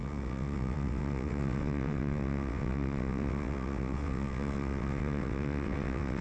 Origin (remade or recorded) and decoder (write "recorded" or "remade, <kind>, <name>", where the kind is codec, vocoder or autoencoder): remade, vocoder, WaveNeXt